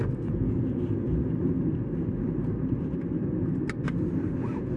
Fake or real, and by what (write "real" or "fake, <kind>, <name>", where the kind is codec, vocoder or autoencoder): real